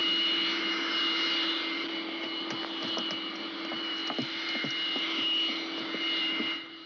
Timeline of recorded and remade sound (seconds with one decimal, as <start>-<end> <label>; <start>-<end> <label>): 0.0-6.9 recorded

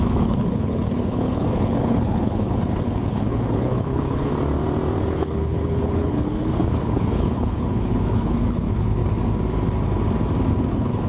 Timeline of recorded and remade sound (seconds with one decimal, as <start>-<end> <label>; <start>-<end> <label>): 0.0-4.3 remade; 4.3-5.0 recorded; 5.0-9.0 remade; 9.0-10.7 recorded; 10.7-11.1 remade

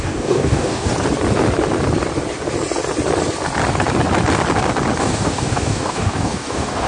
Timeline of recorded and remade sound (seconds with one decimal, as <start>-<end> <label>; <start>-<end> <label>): 0.0-0.9 remade; 0.9-5.0 recorded; 5.0-6.9 remade

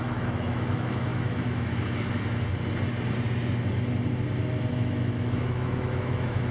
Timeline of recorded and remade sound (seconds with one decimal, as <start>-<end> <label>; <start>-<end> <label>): 0.0-2.5 remade; 2.5-4.7 recorded; 4.7-6.5 remade

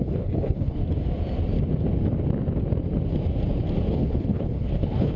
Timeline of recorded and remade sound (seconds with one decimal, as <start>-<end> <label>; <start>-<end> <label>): 0.0-0.8 remade; 0.8-3.9 recorded; 3.9-5.2 remade

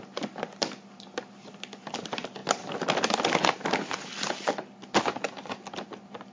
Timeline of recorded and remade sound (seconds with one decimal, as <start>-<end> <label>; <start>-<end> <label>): 0.0-6.3 recorded

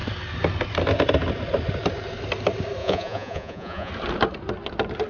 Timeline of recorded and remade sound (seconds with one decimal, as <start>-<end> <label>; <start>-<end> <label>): 0.0-2.8 recorded; 2.8-3.9 remade; 3.9-5.1 recorded

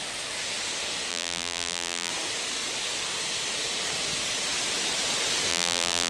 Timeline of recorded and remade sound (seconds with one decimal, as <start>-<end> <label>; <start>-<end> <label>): 0.0-1.1 recorded; 1.1-2.1 remade; 2.1-5.5 recorded; 5.5-6.1 remade